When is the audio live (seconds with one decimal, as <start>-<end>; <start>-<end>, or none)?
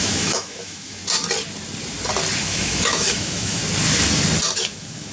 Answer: 1.0-2.4; 3.6-4.6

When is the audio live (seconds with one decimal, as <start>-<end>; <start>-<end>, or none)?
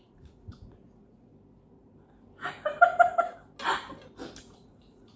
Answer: 1.3-4.4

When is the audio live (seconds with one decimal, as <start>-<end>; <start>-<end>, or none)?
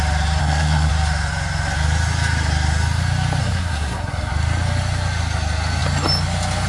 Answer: 0.0-0.4; 0.9-3.4; 4.3-6.7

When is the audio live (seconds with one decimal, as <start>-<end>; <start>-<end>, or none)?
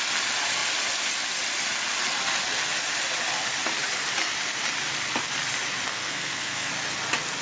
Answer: 0.0-5.9; 6.7-7.4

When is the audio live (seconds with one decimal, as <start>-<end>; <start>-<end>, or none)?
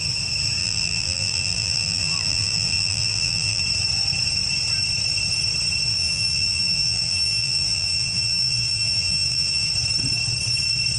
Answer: 0.0-0.6; 3.6-5.9; 9.7-11.0